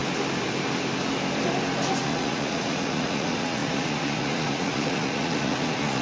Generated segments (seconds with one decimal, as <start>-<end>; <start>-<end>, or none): 2.0-6.0